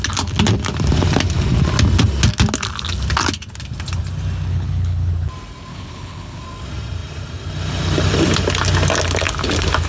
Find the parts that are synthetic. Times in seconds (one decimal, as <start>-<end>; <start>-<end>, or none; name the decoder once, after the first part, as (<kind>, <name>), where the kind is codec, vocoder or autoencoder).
4.5-5.1 (codec, HILCodec); 5.7-6.4